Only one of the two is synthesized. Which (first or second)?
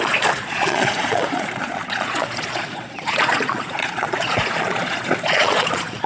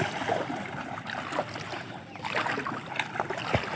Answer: first